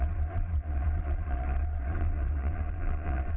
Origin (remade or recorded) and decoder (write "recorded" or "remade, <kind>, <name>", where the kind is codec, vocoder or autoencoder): remade, vocoder, Vocos